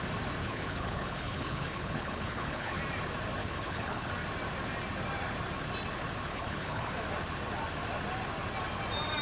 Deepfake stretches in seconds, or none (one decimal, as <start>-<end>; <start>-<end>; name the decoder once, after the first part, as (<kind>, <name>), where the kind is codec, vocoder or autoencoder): 0.4-2.8 (codec, HILCodec); 3.4-4.1; 6.3-6.9